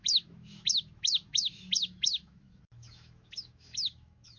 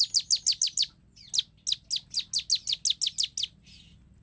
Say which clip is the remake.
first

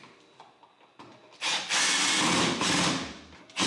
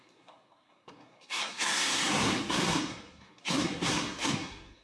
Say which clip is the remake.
second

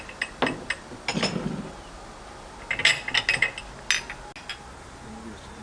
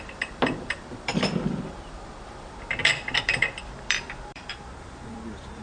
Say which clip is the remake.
second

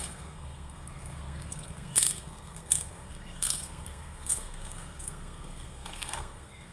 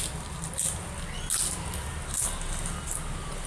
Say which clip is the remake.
first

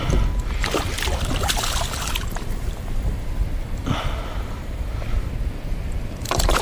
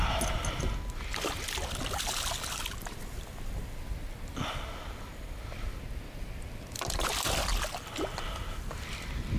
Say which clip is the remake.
first